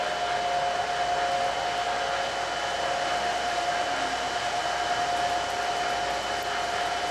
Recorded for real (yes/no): yes